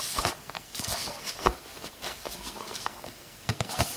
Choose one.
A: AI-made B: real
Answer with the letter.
A